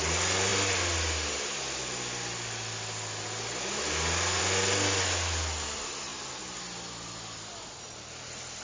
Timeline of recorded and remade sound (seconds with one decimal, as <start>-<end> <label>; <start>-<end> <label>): 0.0-8.6 recorded